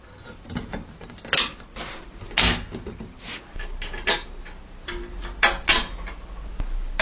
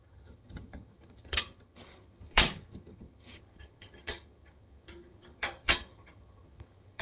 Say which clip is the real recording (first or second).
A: first